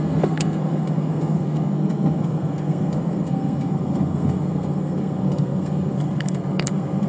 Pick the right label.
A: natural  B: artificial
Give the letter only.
B